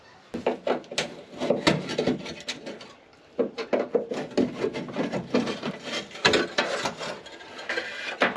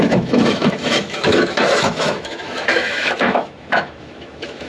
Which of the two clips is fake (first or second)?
second